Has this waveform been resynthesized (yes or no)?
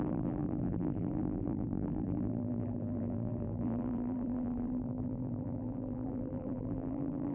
yes